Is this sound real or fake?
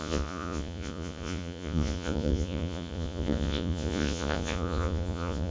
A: fake